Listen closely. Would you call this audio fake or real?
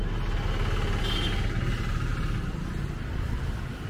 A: real